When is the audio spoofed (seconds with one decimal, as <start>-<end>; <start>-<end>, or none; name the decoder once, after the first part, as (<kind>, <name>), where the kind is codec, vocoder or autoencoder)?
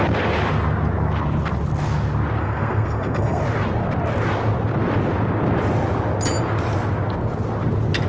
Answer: 2.4-3.4 (codec, SNAC)